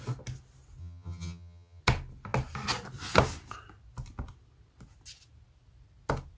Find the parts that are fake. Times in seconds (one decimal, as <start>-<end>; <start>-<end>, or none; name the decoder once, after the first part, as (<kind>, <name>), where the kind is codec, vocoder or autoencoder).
0.8-1.8 (vocoder, HiFi-GAN)